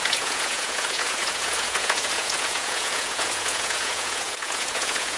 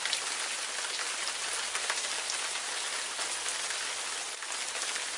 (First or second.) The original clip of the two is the second